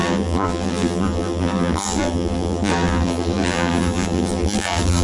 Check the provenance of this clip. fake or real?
fake